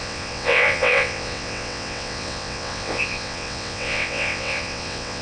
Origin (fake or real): fake